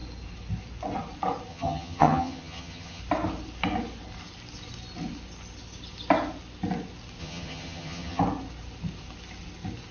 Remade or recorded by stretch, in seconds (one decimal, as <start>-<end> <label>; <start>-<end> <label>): 0.0-1.5 recorded; 1.5-3.0 remade; 3.0-7.2 recorded; 7.2-8.2 remade; 8.2-9.9 recorded